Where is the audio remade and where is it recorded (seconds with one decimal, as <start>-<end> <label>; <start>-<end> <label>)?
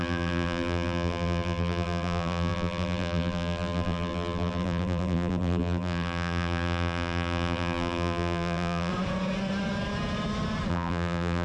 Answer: 0.0-8.9 remade; 8.9-10.7 recorded; 10.7-11.4 remade